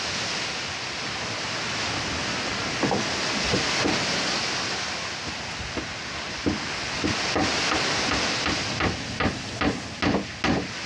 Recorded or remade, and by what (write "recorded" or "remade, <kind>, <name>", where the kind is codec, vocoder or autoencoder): recorded